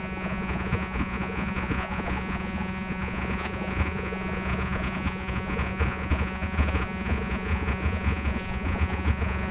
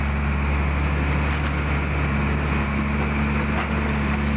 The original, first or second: second